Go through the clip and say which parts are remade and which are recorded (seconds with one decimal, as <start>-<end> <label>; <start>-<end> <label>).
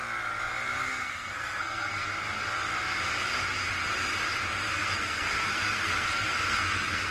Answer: 0.0-1.0 recorded; 1.0-2.1 remade; 2.1-4.7 recorded; 4.7-7.1 remade